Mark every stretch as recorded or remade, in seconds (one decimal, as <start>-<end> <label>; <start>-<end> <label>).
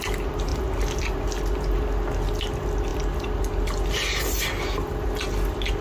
0.0-5.8 recorded